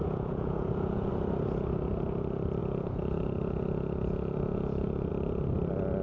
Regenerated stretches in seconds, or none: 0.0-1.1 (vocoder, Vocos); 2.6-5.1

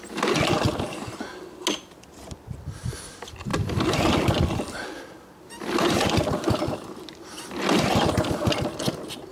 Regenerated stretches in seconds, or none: none

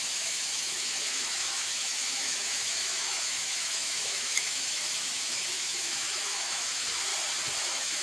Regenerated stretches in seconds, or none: 0.0-7.1 (autoencoder, DAC-VAE); 7.6-8.0

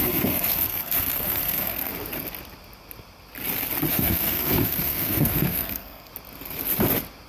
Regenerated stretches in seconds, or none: 0.0-1.9 (codec, SNAC); 3.9-6.1

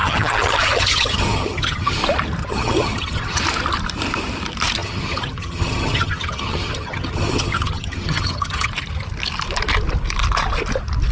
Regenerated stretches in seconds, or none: 0.0-2.0 (vocoder, HiFi-GAN); 2.4-3.4; 4.8-8.7

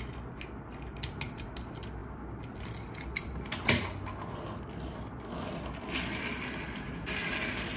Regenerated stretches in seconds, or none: none